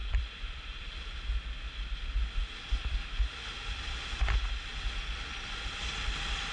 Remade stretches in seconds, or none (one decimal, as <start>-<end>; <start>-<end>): 0.0-0.9